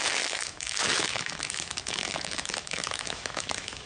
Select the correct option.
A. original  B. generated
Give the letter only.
B